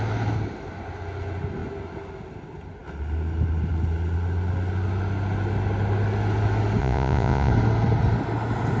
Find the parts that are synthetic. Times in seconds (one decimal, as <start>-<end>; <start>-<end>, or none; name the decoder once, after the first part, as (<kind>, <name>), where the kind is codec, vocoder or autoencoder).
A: 6.8-7.5 (vocoder, Vocos)